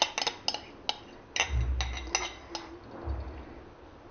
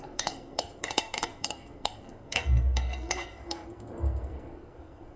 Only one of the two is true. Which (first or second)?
first